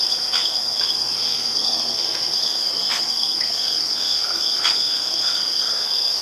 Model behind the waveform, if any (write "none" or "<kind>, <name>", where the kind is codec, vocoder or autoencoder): codec, SNAC